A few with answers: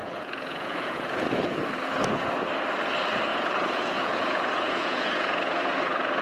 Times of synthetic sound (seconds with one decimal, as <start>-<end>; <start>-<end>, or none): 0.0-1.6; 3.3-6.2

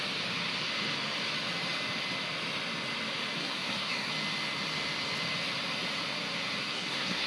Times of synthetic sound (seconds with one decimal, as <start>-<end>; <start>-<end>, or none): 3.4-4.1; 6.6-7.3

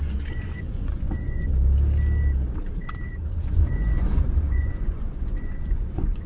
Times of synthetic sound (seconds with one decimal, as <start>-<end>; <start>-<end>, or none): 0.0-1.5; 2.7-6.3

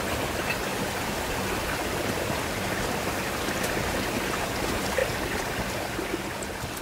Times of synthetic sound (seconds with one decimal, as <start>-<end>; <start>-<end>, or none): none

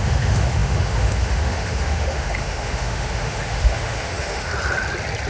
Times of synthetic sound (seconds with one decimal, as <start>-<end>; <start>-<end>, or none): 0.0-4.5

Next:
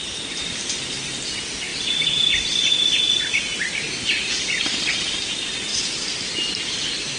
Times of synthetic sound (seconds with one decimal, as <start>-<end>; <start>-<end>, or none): 1.7-4.4; 5.7-6.3